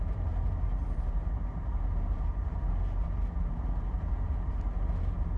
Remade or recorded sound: remade